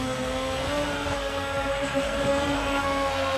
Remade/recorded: remade